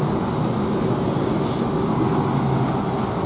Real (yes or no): yes